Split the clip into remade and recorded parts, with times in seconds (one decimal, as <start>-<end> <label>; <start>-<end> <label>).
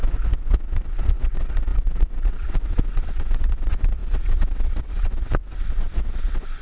0.0-6.6 remade